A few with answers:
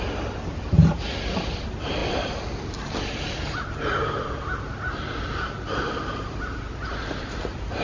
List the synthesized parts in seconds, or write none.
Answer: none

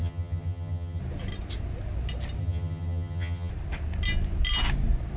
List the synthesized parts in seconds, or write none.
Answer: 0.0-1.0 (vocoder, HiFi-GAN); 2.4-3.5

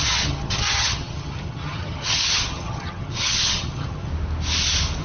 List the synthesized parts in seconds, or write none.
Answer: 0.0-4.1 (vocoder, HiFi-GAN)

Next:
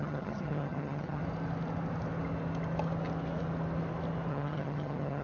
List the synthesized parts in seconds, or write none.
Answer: 0.0-1.2 (vocoder, HiFi-GAN); 4.3-5.2

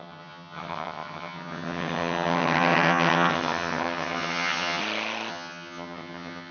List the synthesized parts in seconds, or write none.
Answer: 0.0-4.8 (vocoder, HiFi-GAN); 5.3-6.5

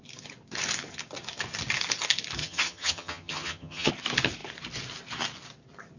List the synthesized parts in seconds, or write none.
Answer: 2.4-3.9 (vocoder, HiFi-GAN)